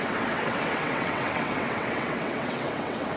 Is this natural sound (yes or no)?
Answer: no